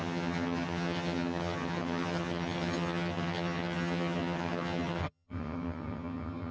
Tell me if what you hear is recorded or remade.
remade